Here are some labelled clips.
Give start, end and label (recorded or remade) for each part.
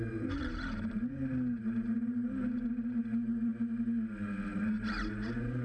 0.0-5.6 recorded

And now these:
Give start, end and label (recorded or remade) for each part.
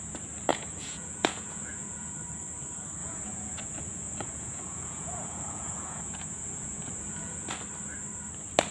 0.0-0.5 recorded; 0.5-2.1 remade; 2.1-3.0 recorded; 3.0-7.5 remade; 7.5-8.7 recorded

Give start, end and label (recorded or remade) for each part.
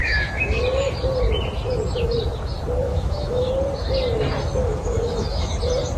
0.0-0.6 remade; 0.6-2.9 recorded; 2.9-3.5 remade; 3.5-4.6 recorded; 4.6-5.5 remade; 5.5-6.0 recorded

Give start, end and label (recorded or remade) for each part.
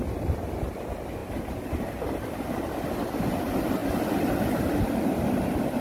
0.0-5.8 recorded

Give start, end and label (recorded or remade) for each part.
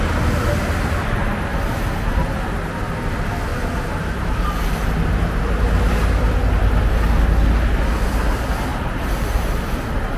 0.0-3.5 recorded; 3.5-4.7 remade; 4.7-8.7 recorded; 8.7-9.6 remade; 9.6-10.2 recorded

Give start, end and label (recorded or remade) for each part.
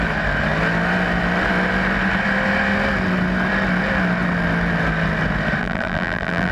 0.0-5.6 recorded; 5.6-6.5 remade